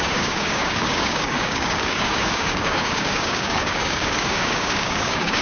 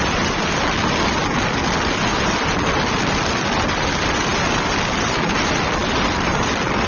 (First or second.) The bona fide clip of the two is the second